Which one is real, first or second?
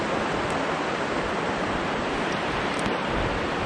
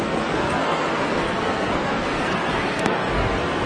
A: first